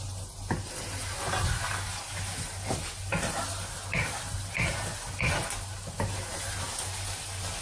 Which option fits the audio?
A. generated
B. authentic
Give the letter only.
B